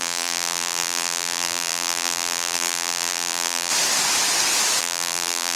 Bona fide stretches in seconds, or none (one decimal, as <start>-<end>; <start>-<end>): 3.7-4.8